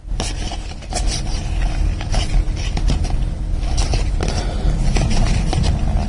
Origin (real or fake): real